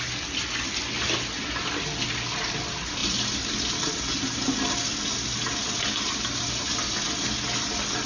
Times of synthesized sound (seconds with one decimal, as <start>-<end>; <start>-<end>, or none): none